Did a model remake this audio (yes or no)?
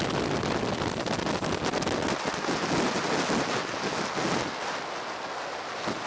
no